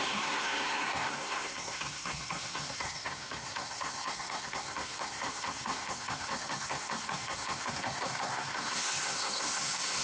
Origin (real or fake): fake